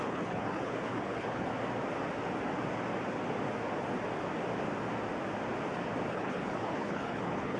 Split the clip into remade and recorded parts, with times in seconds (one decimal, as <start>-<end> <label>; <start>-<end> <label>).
0.0-1.5 remade; 1.5-6.1 recorded; 6.1-7.6 remade

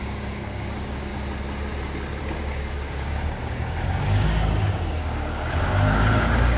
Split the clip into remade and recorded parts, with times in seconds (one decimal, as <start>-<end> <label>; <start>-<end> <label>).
0.0-1.1 remade; 1.1-2.2 recorded; 2.2-6.6 remade

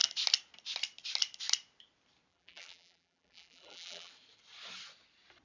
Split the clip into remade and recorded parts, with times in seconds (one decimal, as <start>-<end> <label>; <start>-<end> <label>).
0.0-2.3 recorded; 2.3-4.1 remade; 4.1-5.4 recorded

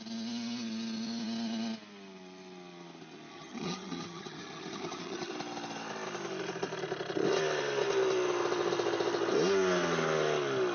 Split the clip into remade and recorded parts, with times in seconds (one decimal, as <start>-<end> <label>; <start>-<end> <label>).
0.0-3.3 recorded; 3.3-5.3 remade; 5.3-10.7 recorded

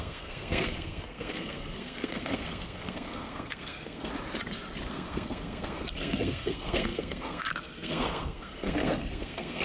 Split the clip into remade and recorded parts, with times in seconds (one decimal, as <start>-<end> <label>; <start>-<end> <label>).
0.0-4.1 remade; 4.1-4.9 recorded; 4.9-9.6 remade

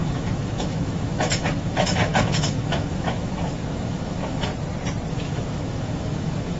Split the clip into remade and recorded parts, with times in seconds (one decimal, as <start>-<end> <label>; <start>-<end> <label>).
0.0-4.5 remade; 4.5-5.1 recorded; 5.1-6.6 remade